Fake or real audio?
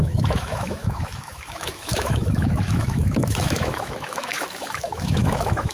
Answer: fake